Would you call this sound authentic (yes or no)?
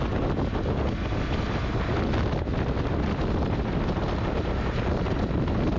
yes